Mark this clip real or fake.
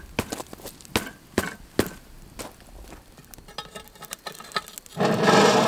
real